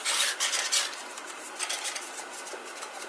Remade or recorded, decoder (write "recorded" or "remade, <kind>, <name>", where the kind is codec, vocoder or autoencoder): recorded